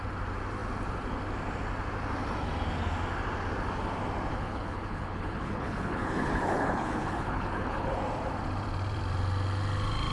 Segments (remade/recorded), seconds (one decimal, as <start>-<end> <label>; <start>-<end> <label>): 0.0-4.3 recorded; 4.3-7.9 remade; 7.9-10.1 recorded